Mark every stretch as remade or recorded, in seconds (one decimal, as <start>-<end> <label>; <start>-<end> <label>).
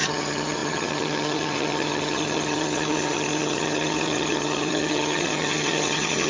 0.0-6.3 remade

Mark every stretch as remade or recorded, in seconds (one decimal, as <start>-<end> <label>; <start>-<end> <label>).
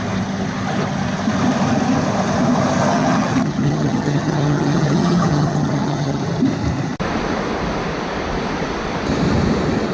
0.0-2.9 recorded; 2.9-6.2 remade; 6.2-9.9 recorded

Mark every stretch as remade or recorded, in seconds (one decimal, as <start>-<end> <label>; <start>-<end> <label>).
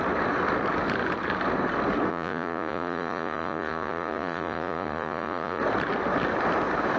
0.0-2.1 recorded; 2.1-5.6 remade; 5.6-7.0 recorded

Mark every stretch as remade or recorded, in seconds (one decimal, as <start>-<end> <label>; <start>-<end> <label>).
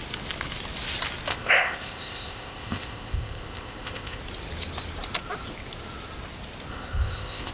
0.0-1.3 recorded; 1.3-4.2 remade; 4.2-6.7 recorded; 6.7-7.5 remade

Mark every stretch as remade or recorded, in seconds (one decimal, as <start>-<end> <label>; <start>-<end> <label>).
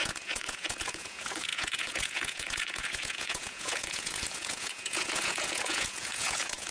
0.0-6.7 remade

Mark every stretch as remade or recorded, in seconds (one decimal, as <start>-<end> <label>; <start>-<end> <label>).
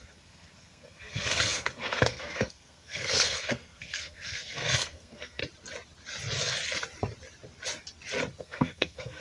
0.0-5.4 remade; 5.4-8.4 recorded; 8.4-9.2 remade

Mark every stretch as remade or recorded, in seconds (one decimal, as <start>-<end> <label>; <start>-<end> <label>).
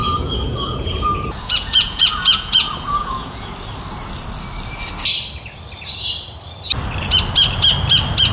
0.0-3.5 remade; 3.5-8.3 recorded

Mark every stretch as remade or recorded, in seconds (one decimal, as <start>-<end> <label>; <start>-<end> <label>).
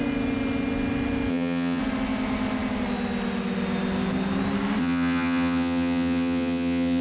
0.0-1.3 recorded; 1.3-1.8 remade; 1.8-4.8 recorded; 4.8-7.0 remade